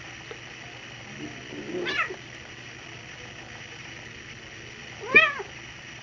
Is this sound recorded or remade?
recorded